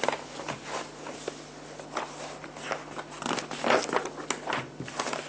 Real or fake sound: real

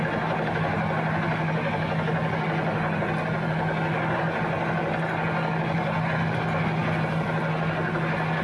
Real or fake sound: real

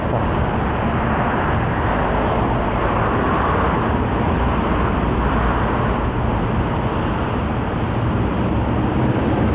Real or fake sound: real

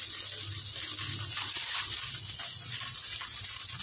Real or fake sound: real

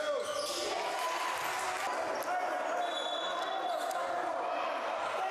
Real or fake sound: real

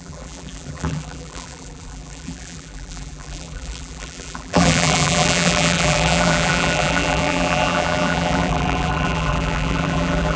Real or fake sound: fake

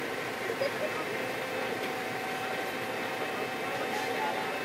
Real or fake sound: real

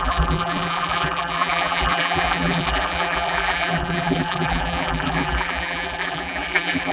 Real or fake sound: fake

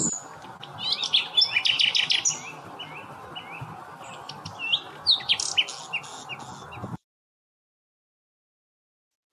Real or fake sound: real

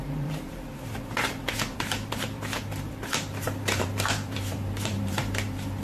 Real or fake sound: fake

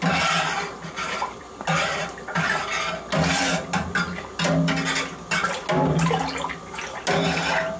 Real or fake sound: real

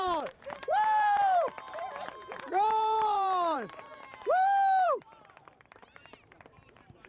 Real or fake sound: fake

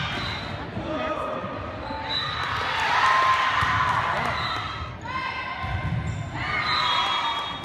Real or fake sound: real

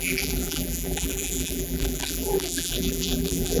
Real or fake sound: fake